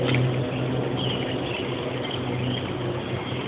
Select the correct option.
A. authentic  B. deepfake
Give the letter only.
A